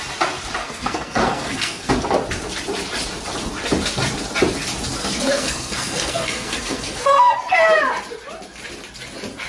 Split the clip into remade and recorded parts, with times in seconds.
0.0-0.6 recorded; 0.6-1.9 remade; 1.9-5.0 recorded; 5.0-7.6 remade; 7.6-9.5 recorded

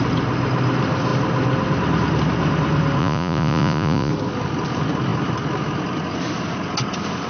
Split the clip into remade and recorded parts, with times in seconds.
0.0-3.0 recorded; 3.0-4.1 remade; 4.1-7.3 recorded

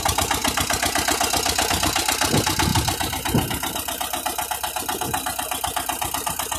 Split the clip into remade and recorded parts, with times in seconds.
0.0-6.6 recorded

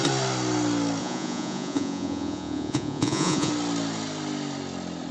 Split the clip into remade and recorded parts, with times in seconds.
0.0-1.0 recorded; 1.0-3.5 remade; 3.5-5.1 recorded